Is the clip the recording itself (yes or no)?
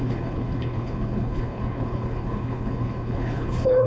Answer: no